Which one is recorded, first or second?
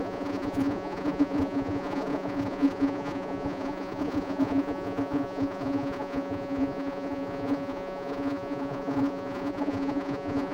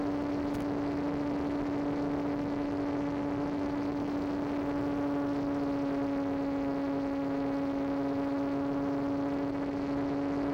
second